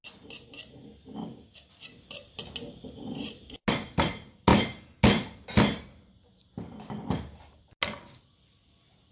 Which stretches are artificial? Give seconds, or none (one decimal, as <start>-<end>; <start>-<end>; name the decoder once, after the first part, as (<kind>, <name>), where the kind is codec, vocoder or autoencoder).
1.2-1.7 (codec, DAC)